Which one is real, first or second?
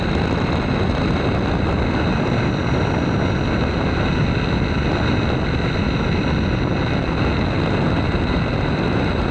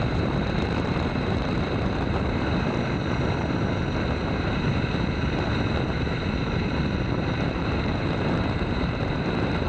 first